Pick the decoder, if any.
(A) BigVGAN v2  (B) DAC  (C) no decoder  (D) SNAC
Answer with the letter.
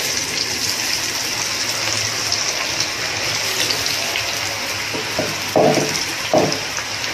C